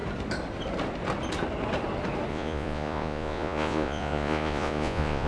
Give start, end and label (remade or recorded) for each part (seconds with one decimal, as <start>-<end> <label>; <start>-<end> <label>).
0.0-2.3 recorded; 2.3-5.3 remade